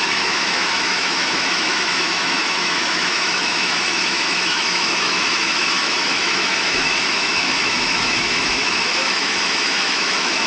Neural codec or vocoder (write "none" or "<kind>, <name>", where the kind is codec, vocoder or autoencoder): autoencoder, DAC-VAE